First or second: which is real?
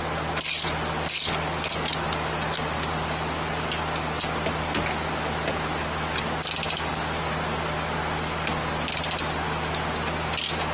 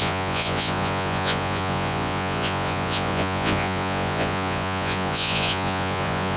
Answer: first